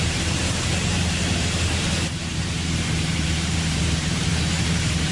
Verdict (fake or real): fake